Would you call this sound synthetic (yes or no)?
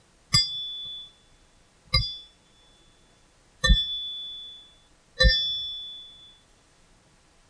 no